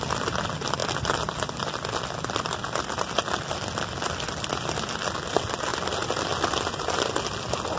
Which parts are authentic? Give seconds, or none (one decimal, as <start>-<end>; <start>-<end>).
0.0-7.8